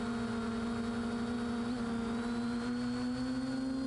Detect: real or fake real